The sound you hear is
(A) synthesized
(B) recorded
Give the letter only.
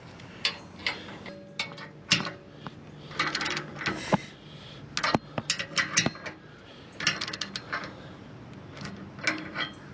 B